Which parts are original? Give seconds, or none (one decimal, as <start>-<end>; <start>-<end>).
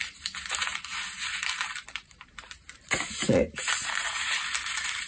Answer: none